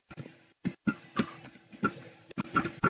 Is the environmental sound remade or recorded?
remade